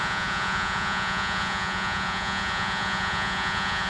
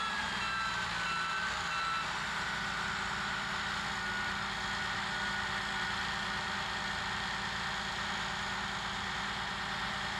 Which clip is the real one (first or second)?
second